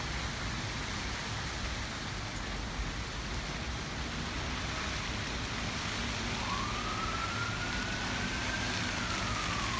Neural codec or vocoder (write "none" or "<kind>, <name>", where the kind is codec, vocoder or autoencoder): none